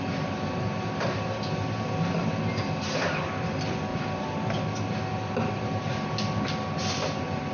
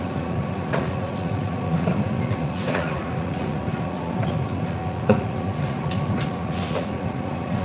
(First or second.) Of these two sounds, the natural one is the first